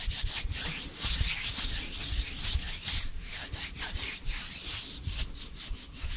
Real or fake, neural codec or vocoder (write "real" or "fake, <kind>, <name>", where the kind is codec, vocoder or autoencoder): real